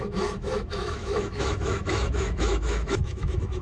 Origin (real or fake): fake